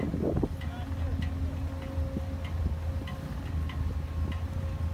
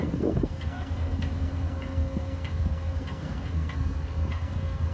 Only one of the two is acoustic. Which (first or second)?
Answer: first